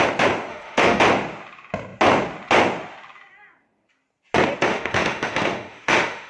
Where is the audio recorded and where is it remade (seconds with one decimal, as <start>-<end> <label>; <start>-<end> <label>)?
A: 0.0-0.5 recorded; 0.5-1.0 remade; 1.0-4.7 recorded; 4.7-6.3 remade